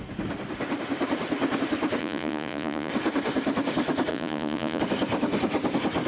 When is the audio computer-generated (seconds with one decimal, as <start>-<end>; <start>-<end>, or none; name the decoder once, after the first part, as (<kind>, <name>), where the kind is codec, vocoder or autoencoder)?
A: 2.0-2.9 (vocoder, Vocos); 4.1-4.8